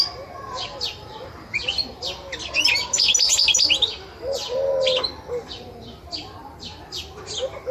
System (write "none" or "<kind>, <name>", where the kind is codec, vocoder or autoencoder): none